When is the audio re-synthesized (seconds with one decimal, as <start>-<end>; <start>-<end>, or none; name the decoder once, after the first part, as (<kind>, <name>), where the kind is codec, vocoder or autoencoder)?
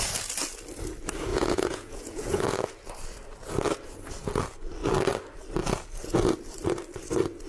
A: 1.3-2.4 (vocoder, Vocos)